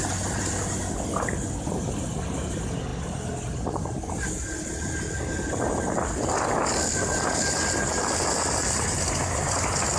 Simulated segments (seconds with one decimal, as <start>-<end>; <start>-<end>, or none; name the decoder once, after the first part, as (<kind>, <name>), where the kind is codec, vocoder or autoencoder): none

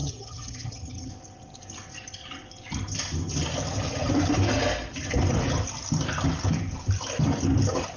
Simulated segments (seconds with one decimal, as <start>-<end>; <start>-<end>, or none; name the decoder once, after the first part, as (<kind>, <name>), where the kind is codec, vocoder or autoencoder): 0.0-1.1 (vocoder, HiFi-GAN)

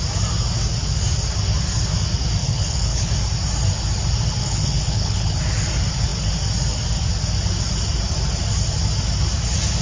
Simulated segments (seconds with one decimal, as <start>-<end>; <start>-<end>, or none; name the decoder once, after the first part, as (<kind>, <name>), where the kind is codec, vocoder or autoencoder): 2.4-3.1 (codec, HILCodec); 4.4-5.4

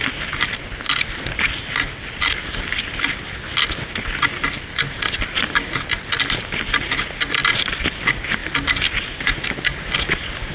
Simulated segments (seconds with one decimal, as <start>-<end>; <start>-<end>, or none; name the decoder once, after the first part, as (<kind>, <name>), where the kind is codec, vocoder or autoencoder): none

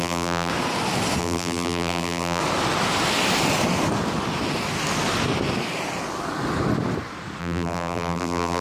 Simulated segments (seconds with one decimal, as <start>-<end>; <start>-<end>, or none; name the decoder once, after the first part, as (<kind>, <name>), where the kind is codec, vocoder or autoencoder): 0.0-0.5 (vocoder, BigVGAN v2); 1.2-2.4; 7.4-8.6

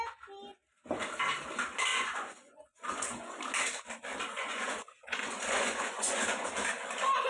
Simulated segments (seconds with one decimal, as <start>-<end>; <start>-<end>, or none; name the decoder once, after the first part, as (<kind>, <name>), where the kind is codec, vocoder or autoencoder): 1.9-3.4 (vocoder, Vocos); 4.3-6.5

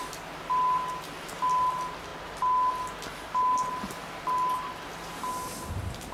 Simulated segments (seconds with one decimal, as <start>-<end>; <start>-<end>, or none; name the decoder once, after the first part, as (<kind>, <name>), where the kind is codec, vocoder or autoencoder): none

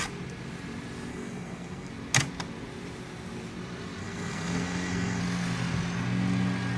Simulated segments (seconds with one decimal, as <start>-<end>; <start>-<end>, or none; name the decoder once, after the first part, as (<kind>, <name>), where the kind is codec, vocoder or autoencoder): 1.1-1.9 (codec, SNAC); 4.0-5.2